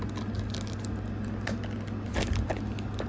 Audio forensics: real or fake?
real